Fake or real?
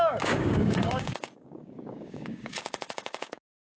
fake